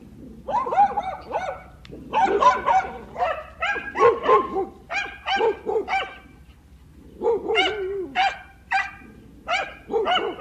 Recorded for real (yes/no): yes